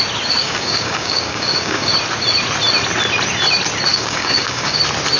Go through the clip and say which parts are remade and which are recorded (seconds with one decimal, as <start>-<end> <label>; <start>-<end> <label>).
0.0-0.4 recorded; 0.4-1.9 remade; 1.9-3.9 recorded; 3.9-4.8 remade; 4.8-5.2 recorded